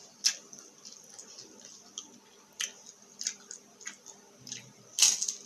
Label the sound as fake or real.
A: real